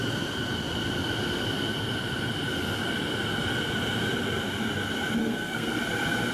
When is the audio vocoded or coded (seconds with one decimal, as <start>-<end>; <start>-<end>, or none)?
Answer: 5.2-5.8